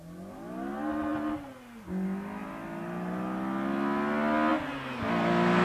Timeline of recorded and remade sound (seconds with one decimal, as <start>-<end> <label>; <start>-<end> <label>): 0.0-5.6 recorded